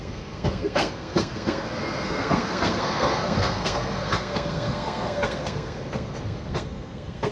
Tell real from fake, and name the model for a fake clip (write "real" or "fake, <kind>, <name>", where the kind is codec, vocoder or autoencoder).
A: fake, codec, SNAC